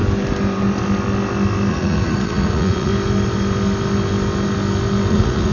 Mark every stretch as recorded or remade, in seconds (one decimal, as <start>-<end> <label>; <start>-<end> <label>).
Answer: 0.0-1.7 recorded; 1.7-2.9 remade; 2.9-5.1 recorded; 5.1-5.5 remade